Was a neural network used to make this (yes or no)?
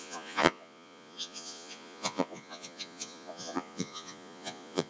yes